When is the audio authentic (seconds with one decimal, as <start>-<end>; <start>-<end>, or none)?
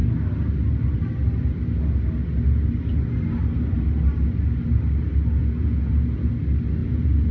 0.0-5.4; 6.3-6.8